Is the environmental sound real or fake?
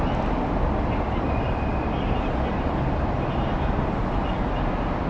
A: real